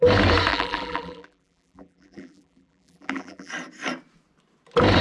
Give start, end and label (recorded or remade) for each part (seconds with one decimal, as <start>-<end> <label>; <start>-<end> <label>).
0.0-0.5 recorded; 0.5-3.5 remade; 3.5-5.0 recorded